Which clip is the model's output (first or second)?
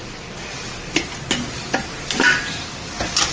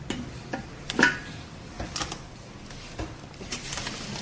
second